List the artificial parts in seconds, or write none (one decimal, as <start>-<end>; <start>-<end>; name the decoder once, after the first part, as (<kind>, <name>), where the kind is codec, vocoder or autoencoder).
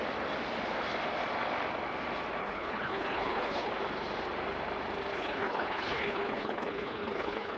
2.4-3.7 (codec, HILCodec); 5.1-7.6